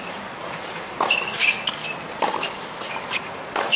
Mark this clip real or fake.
real